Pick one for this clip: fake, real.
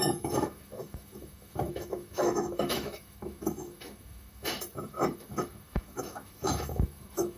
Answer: fake